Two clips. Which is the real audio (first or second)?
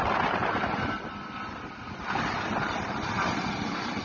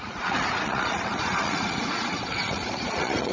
first